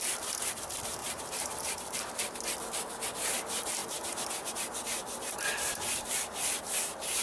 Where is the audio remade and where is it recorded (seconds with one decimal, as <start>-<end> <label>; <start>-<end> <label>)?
0.0-1.0 recorded; 1.0-2.1 remade; 2.1-7.2 recorded